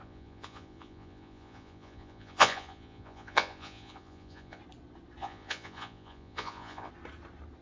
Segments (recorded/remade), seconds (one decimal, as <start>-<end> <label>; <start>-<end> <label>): 0.0-4.6 remade; 4.6-5.2 recorded; 5.2-6.9 remade; 6.9-7.6 recorded